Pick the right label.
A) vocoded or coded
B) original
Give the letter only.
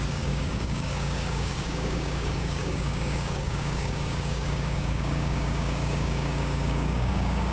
A